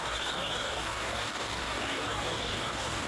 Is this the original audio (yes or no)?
no